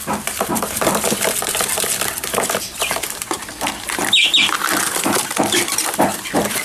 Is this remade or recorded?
remade